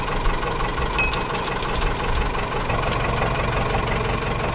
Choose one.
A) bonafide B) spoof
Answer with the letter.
A